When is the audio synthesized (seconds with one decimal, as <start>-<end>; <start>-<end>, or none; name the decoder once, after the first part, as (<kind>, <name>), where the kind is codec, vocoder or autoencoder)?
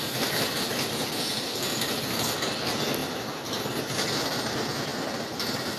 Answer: 0.0-0.7 (vocoder, BigVGAN v2); 3.0-3.6